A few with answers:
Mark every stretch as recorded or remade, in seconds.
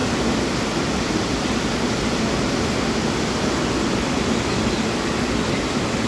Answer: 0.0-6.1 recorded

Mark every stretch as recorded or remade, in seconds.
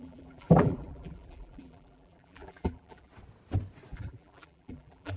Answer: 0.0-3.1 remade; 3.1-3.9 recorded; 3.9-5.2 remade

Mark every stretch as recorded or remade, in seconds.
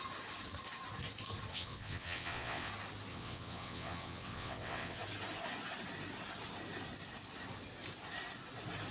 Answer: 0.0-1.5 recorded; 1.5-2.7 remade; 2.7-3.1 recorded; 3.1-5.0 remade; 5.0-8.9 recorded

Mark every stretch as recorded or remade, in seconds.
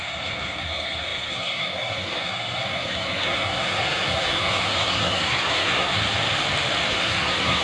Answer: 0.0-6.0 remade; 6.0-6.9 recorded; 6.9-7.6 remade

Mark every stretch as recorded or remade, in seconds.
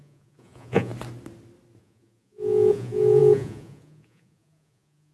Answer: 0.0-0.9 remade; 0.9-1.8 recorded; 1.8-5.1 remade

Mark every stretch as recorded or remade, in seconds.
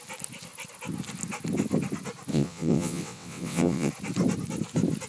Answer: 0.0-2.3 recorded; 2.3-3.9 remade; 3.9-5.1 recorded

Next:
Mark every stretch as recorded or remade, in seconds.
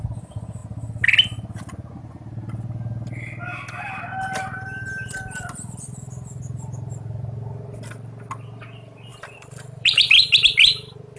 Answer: 0.0-9.1 recorded; 9.1-10.2 remade; 10.2-11.2 recorded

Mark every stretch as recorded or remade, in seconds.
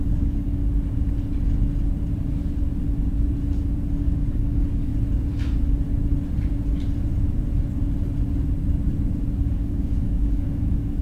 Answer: 0.0-0.6 remade; 0.6-4.0 recorded; 4.0-4.9 remade; 4.9-9.4 recorded; 9.4-11.0 remade